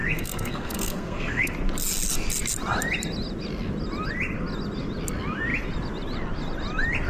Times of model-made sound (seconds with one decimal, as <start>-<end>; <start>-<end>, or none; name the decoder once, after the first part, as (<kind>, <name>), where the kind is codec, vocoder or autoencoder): 0.0-1.5 (codec, SNAC)